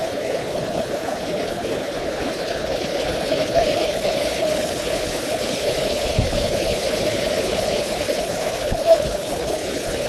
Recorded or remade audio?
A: remade